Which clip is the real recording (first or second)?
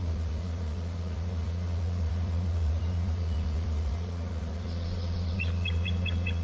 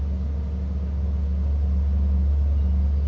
second